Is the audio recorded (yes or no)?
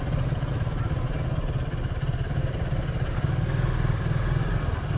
yes